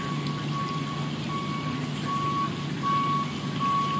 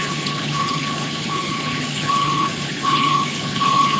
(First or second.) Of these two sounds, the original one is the first